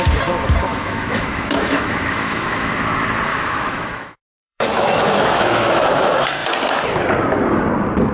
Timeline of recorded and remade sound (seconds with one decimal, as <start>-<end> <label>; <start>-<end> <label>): 0.0-0.7 recorded; 0.7-2.7 remade; 2.7-3.3 recorded; 3.3-6.0 remade; 6.0-8.1 recorded